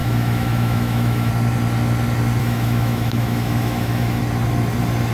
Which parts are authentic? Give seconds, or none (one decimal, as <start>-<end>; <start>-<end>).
1.3-2.4; 4.2-5.1